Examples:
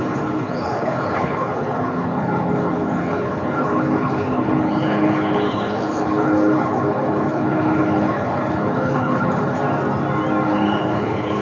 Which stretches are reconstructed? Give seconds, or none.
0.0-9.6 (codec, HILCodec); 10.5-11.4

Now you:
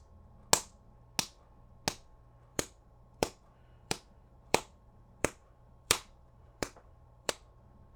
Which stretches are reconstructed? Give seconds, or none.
2.5-7.3 (vocoder, BigVGAN v2)

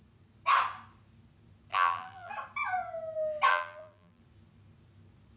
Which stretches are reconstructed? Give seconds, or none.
1.7-2.3 (vocoder, BigVGAN v2); 3.5-4.2

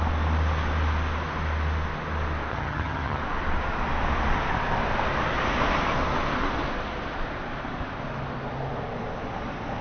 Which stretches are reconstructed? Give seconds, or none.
2.5-3.2 (vocoder, HiFi-GAN)

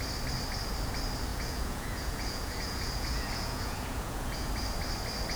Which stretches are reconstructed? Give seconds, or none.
1.3-4.5 (vocoder, Vocos)